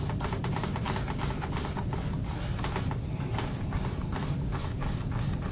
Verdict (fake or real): real